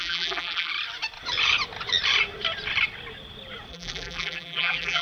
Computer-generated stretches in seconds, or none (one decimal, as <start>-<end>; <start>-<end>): 0.0-0.7; 3.7-5.0